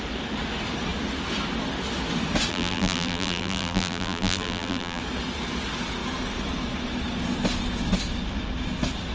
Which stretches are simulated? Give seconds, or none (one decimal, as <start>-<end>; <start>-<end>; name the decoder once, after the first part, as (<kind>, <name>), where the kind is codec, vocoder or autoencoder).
2.5-5.0 (vocoder, BigVGAN v2)